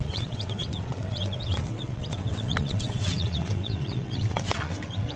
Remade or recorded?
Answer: remade